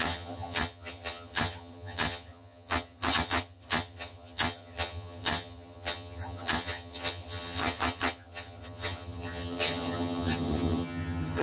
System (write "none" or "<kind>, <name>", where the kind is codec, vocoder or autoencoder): vocoder, HiFi-GAN